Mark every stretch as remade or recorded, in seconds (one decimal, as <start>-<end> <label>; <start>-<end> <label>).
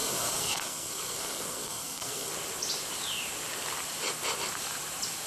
0.0-2.3 remade; 2.3-5.3 recorded